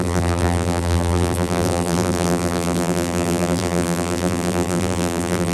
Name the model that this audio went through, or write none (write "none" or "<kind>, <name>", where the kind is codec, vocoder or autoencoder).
vocoder, BigVGAN v2